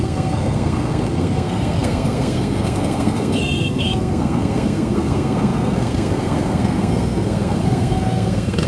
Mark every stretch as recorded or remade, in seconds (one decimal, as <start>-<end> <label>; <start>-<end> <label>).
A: 0.0-8.7 remade